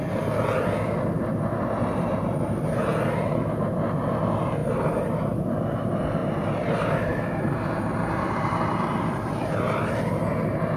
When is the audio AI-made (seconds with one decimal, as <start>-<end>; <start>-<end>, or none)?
1.5-3.0; 4.6-5.4; 6.2-9.9